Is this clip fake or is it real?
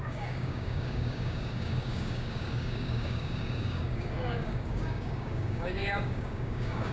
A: fake